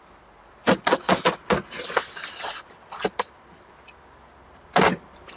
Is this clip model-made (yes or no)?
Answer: no